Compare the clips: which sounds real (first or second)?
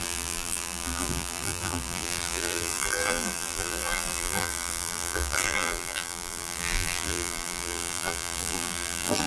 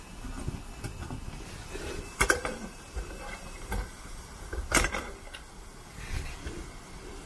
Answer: second